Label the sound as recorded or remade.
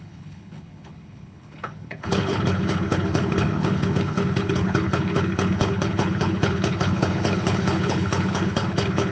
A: remade